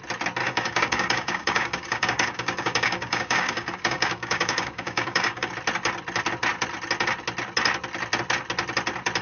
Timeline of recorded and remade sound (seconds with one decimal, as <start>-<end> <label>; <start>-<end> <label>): 0.0-0.4 recorded; 0.4-5.5 remade; 5.5-9.2 recorded